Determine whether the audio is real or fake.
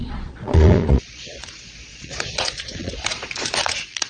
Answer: fake